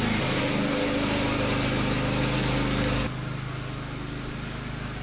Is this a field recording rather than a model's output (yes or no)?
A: yes